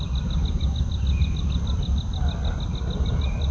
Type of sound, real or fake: real